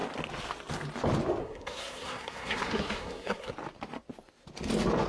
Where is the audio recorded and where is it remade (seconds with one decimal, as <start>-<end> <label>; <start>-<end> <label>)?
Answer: 0.0-1.4 recorded; 1.4-3.5 remade; 3.5-5.1 recorded